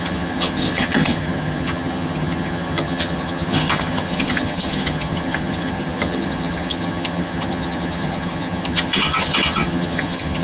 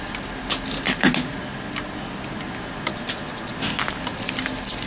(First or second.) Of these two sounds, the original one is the second